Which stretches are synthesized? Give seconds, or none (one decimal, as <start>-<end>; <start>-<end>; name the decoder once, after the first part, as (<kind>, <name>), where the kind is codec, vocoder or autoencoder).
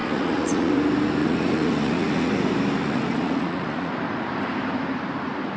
0.0-0.7 (vocoder, Vocos); 1.2-2.3; 2.8-3.9